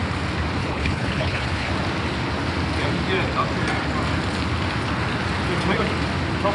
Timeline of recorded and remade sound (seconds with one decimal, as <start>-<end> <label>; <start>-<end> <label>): 0.0-0.6 recorded; 0.6-1.7 remade; 1.7-6.5 recorded